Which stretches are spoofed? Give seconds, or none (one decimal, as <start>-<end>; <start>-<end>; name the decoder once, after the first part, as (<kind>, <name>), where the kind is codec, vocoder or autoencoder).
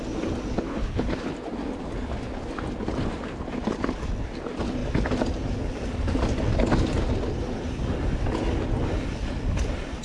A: 0.5-1.3 (codec, HILCodec)